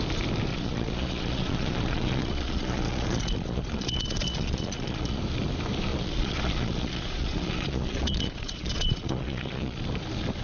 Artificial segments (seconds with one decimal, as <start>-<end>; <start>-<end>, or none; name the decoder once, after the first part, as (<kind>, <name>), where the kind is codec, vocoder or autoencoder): 0.5-5.2 (vocoder, Vocos); 5.9-9.8